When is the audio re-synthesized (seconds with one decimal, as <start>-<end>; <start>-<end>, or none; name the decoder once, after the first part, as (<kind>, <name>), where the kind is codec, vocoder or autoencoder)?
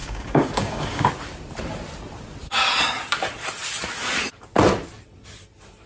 0.0-1.1 (codec, DAC)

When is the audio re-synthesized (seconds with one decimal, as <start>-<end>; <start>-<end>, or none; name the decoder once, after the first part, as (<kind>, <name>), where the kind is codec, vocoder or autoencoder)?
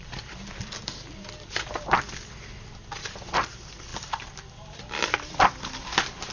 none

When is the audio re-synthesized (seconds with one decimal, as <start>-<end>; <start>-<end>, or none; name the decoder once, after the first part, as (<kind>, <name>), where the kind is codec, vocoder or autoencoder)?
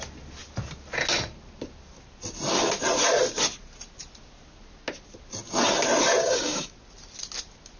6.2-6.7 (codec, DAC)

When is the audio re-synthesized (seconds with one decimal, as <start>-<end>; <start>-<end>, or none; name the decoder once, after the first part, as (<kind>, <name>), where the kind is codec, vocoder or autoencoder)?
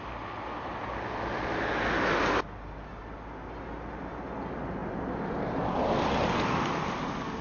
none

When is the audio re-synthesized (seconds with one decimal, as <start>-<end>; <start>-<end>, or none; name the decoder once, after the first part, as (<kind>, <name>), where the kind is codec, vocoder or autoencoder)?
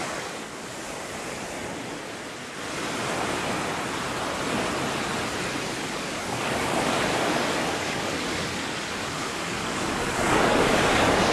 0.0-0.6 (codec, DAC); 5.8-11.3